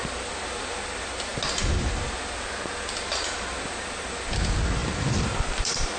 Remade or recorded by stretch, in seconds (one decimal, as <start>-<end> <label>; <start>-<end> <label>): 0.0-4.8 recorded; 4.8-6.0 remade